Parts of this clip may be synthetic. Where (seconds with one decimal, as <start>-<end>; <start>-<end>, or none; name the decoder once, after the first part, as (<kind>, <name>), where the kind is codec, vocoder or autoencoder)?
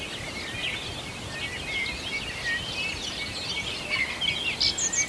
none